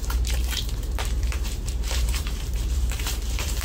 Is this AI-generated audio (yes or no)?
yes